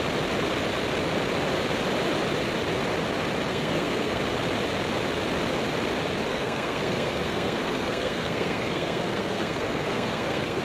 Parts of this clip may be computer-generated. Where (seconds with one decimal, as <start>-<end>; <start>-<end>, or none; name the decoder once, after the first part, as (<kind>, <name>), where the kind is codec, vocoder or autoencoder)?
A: 3.5-4.2 (codec, SNAC); 6.3-10.6